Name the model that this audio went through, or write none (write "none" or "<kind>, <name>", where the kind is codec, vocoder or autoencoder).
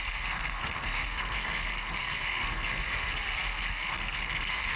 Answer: codec, SNAC